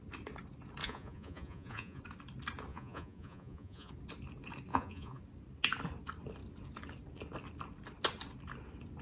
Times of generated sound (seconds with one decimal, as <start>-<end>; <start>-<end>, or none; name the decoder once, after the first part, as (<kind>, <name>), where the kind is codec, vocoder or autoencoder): 0.8-2.0 (vocoder, Vocos); 2.7-3.9; 4.7-5.2